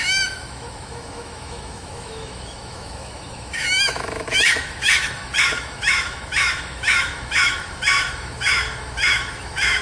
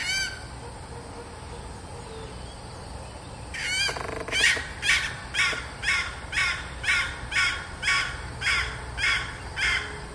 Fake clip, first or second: first